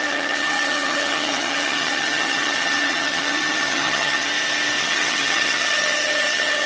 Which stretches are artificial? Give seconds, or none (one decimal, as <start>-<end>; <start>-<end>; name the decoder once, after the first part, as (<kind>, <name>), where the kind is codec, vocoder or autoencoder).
0.0-4.3 (vocoder, HiFi-GAN); 4.8-6.7